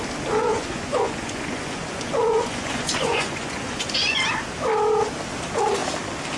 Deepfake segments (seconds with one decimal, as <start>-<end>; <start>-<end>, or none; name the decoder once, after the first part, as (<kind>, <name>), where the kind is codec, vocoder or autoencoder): 0.4-4.2 (vocoder, Vocos)